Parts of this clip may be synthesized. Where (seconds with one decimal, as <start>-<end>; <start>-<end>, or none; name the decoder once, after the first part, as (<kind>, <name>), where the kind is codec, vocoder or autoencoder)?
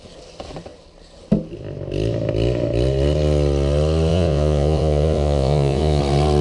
4.1-6.0 (vocoder, Vocos)